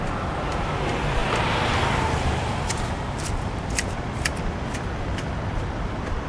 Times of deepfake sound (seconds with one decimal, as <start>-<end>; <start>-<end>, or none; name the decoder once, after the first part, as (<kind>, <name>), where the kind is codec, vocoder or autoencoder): none